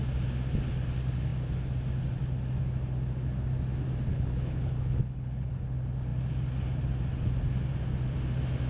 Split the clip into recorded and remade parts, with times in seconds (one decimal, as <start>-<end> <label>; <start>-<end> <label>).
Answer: 0.0-4.1 recorded; 4.1-5.5 remade; 5.5-8.7 recorded